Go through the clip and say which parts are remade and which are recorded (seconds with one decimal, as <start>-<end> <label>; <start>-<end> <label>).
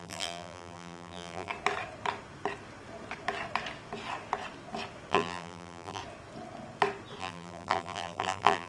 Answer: 0.0-1.5 remade; 1.5-5.1 recorded; 5.1-6.0 remade; 6.0-7.2 recorded; 7.2-8.7 remade